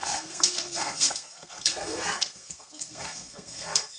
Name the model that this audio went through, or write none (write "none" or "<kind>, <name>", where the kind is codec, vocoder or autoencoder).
codec, SNAC